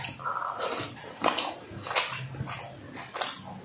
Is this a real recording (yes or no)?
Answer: yes